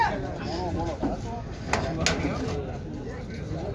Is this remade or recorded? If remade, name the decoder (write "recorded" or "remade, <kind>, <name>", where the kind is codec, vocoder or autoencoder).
recorded